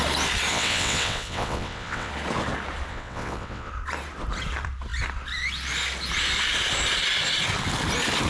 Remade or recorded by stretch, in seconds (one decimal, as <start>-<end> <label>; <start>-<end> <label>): 0.0-0.5 recorded; 0.5-2.1 remade; 2.1-2.9 recorded; 2.9-3.7 remade; 3.7-8.3 recorded